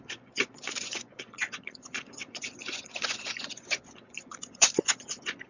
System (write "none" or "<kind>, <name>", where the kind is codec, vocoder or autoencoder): vocoder, Vocos